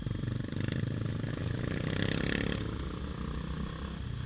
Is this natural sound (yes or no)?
yes